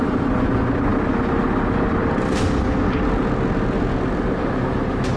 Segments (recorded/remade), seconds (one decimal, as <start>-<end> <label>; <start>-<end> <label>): 0.0-5.2 recorded